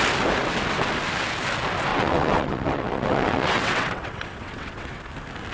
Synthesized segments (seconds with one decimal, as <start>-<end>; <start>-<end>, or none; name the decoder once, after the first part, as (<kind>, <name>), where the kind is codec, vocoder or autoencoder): 1.9-5.0 (vocoder, WaveNeXt)